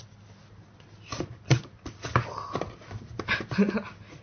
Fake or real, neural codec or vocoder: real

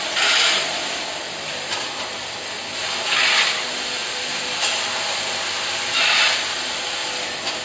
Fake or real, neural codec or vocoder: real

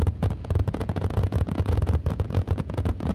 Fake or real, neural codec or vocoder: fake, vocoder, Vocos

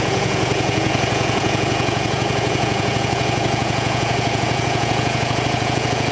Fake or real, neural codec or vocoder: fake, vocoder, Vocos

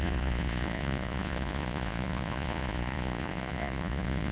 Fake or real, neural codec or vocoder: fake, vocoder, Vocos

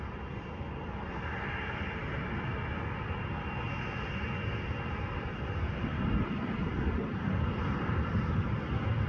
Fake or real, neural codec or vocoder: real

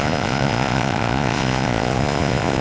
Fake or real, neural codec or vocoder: fake, vocoder, Vocos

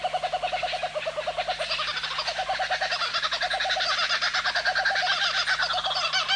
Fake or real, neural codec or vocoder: real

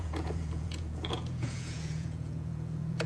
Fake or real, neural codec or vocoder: fake, vocoder, Vocos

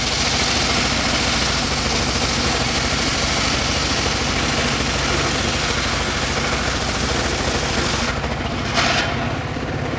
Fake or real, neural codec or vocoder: real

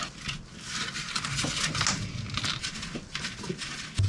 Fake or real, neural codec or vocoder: real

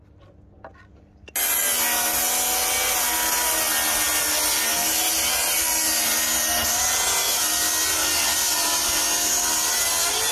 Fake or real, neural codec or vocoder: real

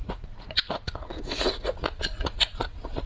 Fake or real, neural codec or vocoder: fake, vocoder, Vocos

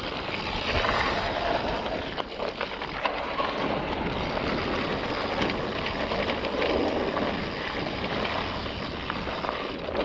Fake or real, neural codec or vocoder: real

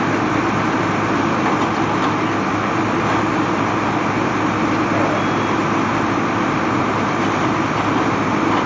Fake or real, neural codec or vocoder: real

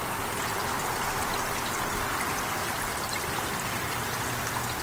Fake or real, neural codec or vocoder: real